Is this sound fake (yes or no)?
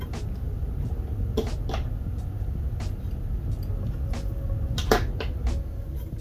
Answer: no